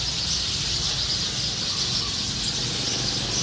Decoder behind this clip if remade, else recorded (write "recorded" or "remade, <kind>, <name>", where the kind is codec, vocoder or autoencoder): recorded